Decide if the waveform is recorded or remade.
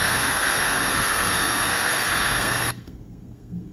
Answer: remade